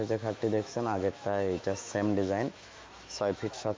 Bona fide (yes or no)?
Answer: no